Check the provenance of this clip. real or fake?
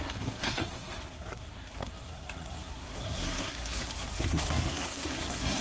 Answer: fake